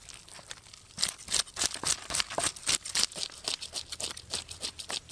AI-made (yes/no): no